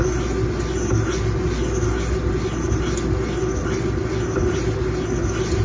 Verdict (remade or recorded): recorded